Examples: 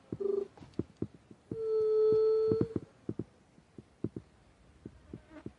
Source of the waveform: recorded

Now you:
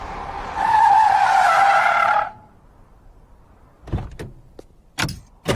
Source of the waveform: recorded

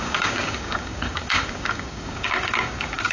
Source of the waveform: remade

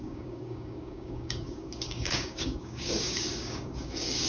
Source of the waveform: remade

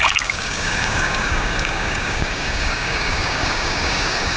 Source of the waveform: remade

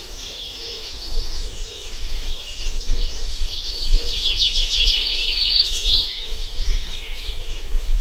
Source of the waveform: remade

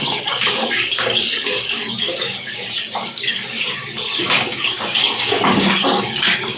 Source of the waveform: remade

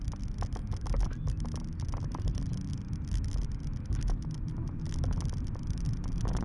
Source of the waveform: recorded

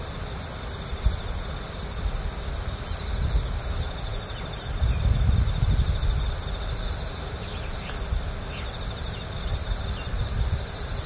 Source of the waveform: recorded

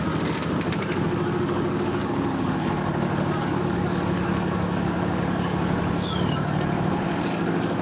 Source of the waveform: remade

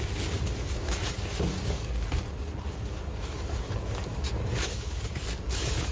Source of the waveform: remade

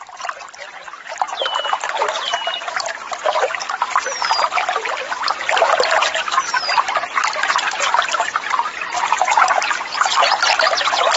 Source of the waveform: recorded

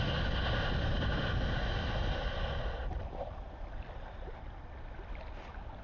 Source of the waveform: recorded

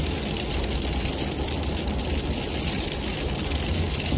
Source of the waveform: recorded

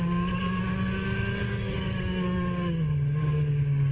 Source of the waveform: remade